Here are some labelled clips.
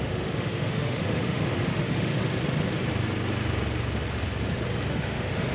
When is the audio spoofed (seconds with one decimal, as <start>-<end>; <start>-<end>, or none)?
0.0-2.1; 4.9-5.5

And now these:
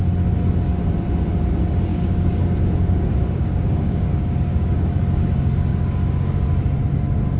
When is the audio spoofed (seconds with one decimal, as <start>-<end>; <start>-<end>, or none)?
1.9-5.1; 5.7-6.5

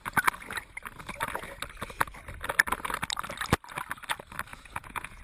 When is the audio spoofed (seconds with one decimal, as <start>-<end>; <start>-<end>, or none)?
4.5-5.2